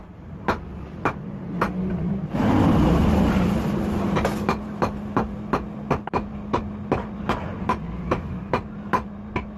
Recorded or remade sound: recorded